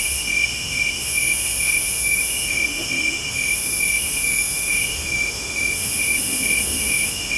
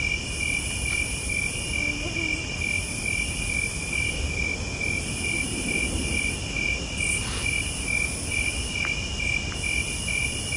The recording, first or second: second